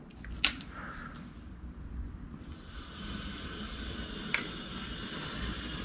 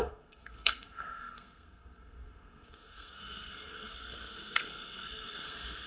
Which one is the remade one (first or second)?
second